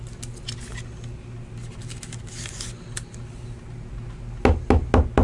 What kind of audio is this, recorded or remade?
recorded